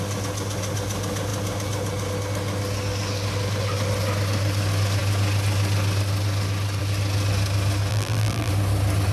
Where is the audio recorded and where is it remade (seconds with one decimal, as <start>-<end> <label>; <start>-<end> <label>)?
0.0-7.9 recorded; 7.9-8.5 remade; 8.5-9.1 recorded